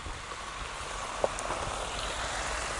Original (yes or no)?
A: yes